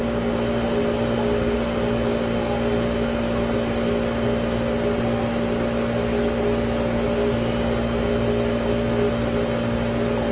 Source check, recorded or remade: recorded